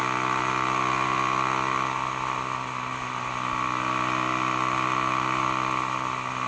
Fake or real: real